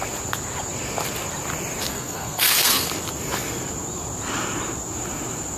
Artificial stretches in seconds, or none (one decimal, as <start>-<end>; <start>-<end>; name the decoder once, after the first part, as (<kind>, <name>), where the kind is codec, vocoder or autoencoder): 1.9-2.9 (codec, SNAC)